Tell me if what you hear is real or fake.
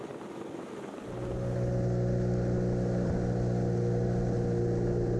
real